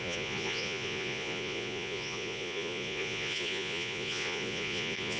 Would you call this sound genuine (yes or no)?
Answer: no